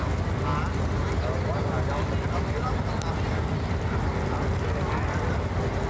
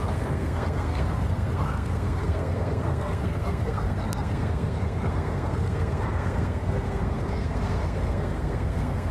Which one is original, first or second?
first